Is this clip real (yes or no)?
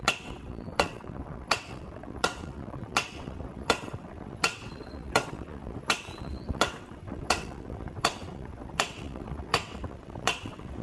no